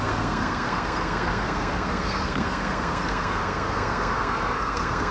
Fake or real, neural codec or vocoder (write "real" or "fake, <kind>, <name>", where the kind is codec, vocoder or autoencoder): fake, codec, SNAC